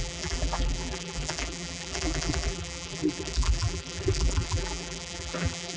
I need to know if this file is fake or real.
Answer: fake